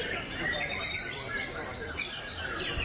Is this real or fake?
fake